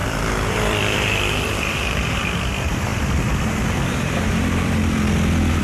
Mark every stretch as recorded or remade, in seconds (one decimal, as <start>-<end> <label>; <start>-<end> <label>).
0.0-2.5 remade; 2.5-2.9 recorded; 2.9-5.6 remade